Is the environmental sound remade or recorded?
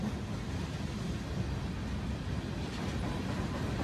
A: recorded